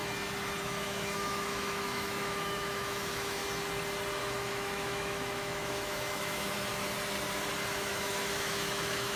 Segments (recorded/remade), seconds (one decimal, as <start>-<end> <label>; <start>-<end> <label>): 0.0-0.6 recorded; 0.6-3.4 remade; 3.4-4.2 recorded; 4.2-6.7 remade; 6.7-7.7 recorded; 7.7-9.2 remade

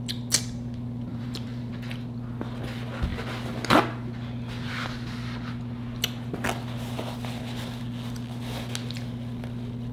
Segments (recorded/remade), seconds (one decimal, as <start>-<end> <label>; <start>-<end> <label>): 0.0-1.1 recorded; 1.1-1.7 remade; 1.7-9.9 recorded

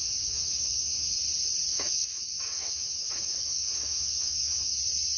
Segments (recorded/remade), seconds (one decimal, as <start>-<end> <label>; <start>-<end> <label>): 0.0-1.2 remade; 1.2-1.7 recorded; 1.7-4.8 remade; 4.8-5.2 recorded

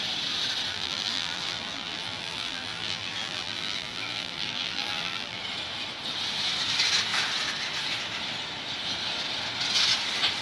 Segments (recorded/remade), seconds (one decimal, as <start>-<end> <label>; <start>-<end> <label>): 0.0-0.7 recorded; 0.7-5.4 remade; 5.4-10.4 recorded

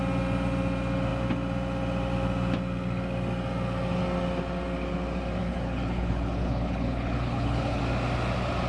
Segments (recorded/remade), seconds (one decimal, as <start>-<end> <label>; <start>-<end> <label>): 0.0-5.4 recorded; 5.4-7.8 remade; 7.8-8.7 recorded

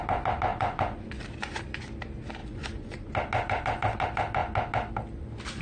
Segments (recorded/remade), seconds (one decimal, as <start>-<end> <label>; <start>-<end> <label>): 0.0-0.5 recorded; 0.5-1.1 remade; 1.1-2.4 recorded; 2.4-3.1 remade; 3.1-5.6 recorded

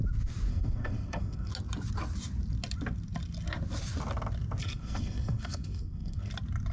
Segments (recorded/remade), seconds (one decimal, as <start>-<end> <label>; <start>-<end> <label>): 0.0-0.5 recorded; 0.5-1.5 remade; 1.5-4.6 recorded; 4.6-6.3 remade; 6.3-6.7 recorded

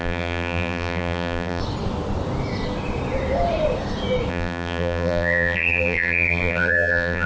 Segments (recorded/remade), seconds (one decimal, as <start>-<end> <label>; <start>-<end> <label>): 0.0-1.6 remade; 1.6-4.3 recorded; 4.3-7.3 remade